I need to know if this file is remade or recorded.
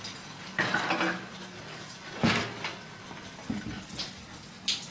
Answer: recorded